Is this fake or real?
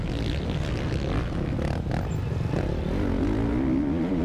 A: real